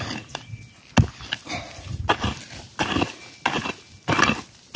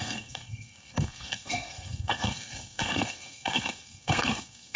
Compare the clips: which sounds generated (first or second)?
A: second